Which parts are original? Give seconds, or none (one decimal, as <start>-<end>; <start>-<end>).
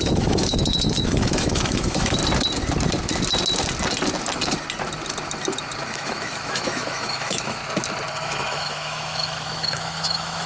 2.2-5.9; 7.6-8.1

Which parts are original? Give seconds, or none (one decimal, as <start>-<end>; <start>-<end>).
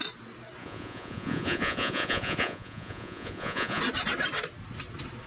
0.0-0.6; 3.8-5.3